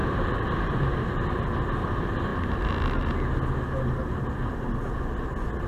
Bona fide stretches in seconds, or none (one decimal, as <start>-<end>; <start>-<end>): 1.1-5.7